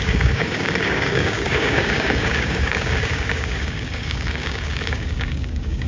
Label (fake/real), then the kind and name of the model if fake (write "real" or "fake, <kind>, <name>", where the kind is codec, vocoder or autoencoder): fake, codec, DAC